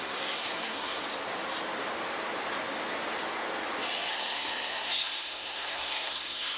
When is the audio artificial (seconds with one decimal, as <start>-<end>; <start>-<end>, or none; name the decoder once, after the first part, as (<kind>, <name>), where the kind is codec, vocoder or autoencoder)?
0.0-1.0 (codec, SNAC); 4.1-6.6